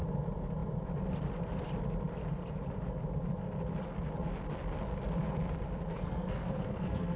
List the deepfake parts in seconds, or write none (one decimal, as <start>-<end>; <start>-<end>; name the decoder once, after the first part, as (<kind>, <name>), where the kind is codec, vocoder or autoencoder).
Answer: 5.9-7.2 (codec, SNAC)